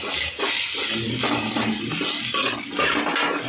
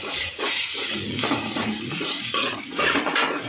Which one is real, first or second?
first